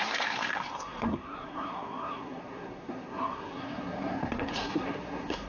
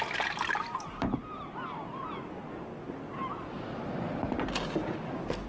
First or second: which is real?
second